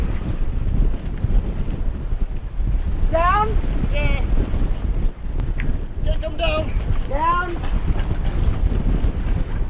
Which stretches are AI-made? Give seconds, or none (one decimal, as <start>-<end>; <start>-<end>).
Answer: 0.0-0.7